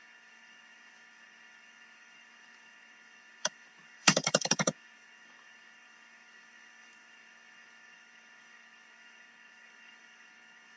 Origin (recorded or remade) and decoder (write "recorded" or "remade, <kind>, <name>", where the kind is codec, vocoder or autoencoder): remade, codec, DAC